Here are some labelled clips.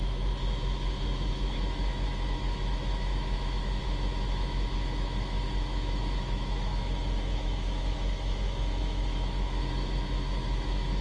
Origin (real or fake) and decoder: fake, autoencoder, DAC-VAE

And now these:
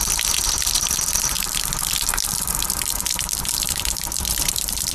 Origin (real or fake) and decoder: fake, vocoder, BigVGAN v2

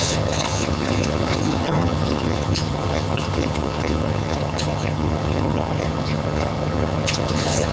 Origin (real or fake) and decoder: fake, vocoder, HiFi-GAN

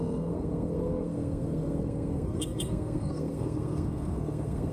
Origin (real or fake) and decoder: fake, codec, SNAC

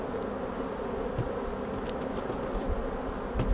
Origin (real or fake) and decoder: real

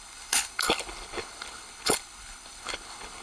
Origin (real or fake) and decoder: fake, codec, HILCodec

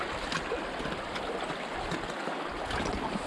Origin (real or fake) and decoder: real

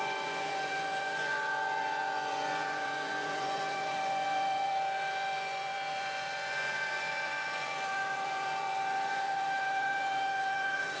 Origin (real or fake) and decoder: fake, vocoder, Vocos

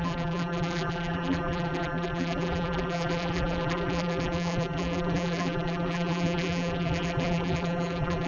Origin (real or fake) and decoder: fake, vocoder, BigVGAN v2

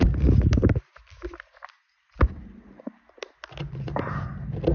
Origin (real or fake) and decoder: real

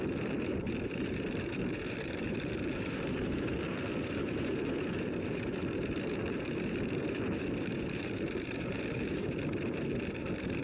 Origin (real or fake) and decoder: fake, vocoder, BigVGAN v2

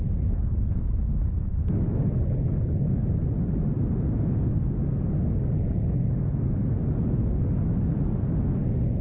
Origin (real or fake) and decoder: real